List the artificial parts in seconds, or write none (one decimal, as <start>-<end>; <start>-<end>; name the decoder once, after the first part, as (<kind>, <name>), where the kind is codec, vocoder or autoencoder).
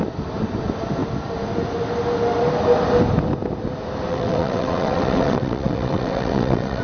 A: 4.1-6.8 (vocoder, WaveNeXt)